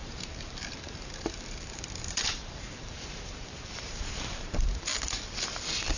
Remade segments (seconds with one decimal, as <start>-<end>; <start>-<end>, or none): 0.0-4.9